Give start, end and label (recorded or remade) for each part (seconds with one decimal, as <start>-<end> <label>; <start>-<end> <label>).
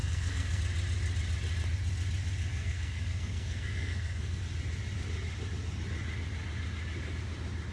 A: 0.0-0.6 remade; 0.6-2.5 recorded; 2.5-4.4 remade; 4.4-7.7 recorded